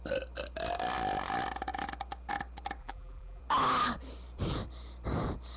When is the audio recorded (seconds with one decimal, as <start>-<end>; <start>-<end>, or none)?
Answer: 0.0-2.8; 3.4-5.6

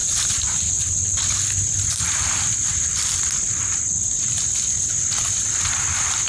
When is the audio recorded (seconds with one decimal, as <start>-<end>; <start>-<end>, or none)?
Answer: 0.8-6.3

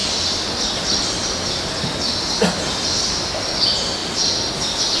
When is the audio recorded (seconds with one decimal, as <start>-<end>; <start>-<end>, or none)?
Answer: 0.0-5.0

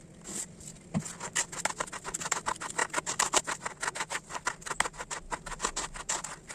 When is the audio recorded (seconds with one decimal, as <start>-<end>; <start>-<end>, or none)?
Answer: 0.0-6.5

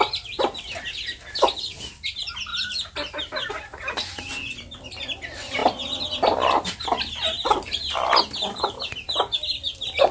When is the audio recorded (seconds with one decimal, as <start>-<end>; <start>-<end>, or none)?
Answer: 0.0-10.1

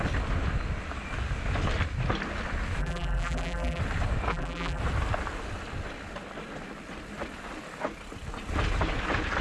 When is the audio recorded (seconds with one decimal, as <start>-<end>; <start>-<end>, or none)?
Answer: 0.0-2.8; 3.8-4.3; 4.8-9.4

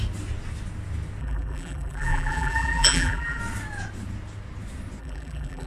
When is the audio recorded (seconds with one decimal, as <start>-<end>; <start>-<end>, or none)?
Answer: 0.0-1.2; 3.4-5.0

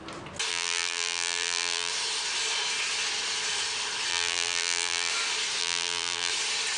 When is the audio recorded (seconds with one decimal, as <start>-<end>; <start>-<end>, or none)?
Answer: 0.0-0.5; 1.9-4.1; 5.1-5.6; 6.3-6.8